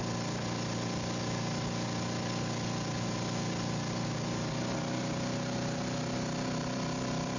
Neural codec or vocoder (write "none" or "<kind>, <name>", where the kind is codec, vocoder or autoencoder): none